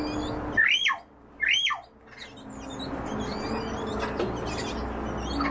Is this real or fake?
real